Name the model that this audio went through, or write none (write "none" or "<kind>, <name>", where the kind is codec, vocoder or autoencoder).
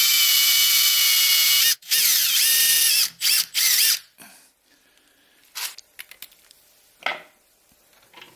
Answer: none